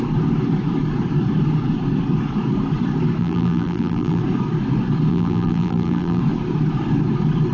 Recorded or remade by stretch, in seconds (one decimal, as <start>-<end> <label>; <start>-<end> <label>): 0.0-3.2 recorded; 3.2-4.2 remade; 4.2-5.1 recorded; 5.1-6.2 remade; 6.2-7.5 recorded